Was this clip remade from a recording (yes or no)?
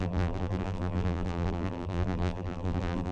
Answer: yes